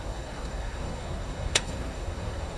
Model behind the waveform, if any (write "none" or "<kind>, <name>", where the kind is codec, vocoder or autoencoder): codec, SNAC